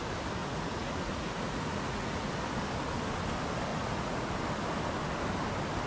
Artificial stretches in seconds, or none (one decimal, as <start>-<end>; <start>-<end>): 0.4-2.3; 3.7-4.3